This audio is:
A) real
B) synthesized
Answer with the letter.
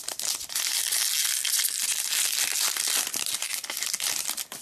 A